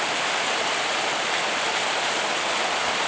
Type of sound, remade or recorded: recorded